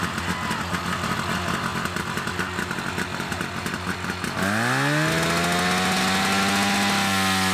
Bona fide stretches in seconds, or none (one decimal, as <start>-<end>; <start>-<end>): 0.0-7.5

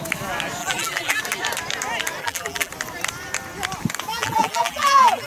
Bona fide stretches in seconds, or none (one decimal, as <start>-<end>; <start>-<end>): 0.0-0.6; 1.2-2.2; 2.7-4.1

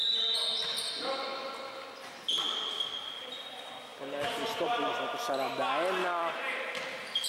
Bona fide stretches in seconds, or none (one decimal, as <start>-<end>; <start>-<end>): 0.0-3.9; 4.9-6.0

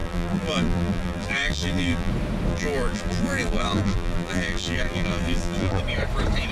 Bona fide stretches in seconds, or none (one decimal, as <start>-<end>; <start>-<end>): 2.1-2.5; 5.8-6.5

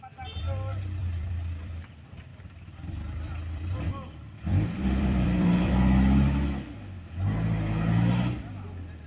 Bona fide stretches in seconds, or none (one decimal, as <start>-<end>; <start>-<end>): 0.0-1.0; 1.7-2.3; 5.7-9.1

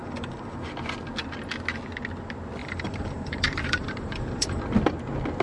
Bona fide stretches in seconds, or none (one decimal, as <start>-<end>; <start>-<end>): 0.7-2.6; 4.6-5.4

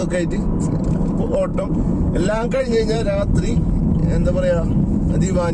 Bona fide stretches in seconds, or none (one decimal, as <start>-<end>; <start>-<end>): 0.0-0.5; 4.0-5.5